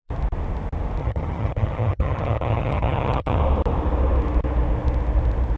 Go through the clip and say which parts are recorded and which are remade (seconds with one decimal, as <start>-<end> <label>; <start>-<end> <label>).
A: 0.0-1.0 recorded; 1.0-3.4 remade; 3.4-5.6 recorded